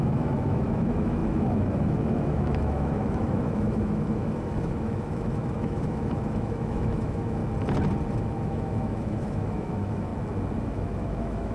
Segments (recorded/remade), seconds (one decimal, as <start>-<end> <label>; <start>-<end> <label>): 0.0-7.4 remade; 7.4-8.2 recorded; 8.2-10.1 remade; 10.1-10.6 recorded; 10.6-11.5 remade